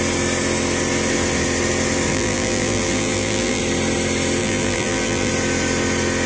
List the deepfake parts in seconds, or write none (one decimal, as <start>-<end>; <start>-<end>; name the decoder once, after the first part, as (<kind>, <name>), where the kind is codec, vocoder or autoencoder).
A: 2.1-3.6 (vocoder, BigVGAN v2); 4.4-5.3